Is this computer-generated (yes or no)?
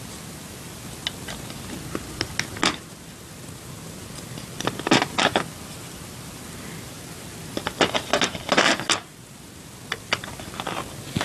no